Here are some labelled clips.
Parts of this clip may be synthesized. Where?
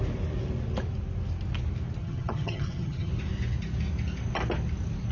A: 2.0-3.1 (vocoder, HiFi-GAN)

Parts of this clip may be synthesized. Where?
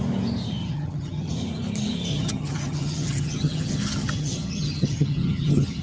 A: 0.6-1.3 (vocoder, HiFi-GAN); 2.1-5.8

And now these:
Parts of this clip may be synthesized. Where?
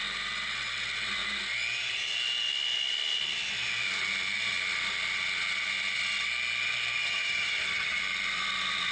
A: 7.0-8.0 (vocoder, HiFi-GAN)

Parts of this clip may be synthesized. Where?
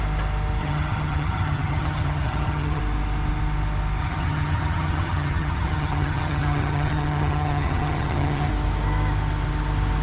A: 0.6-2.8 (vocoder, HiFi-GAN); 4.0-8.5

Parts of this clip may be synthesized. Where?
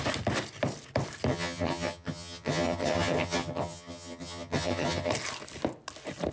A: 1.3-5.1 (vocoder, HiFi-GAN)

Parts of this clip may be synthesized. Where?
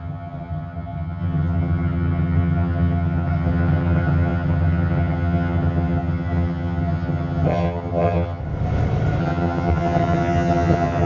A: 0.0-8.4 (vocoder, HiFi-GAN); 9.2-11.1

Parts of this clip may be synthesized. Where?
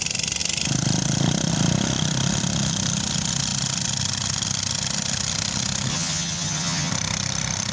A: 5.9-6.9 (vocoder, HiFi-GAN)